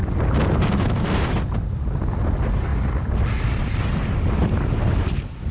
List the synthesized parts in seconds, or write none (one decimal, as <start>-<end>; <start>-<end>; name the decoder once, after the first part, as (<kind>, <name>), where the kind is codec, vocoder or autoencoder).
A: 4.4-4.9 (vocoder, BigVGAN v2)